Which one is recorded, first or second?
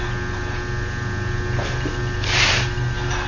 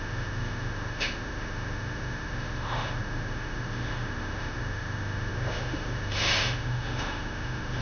first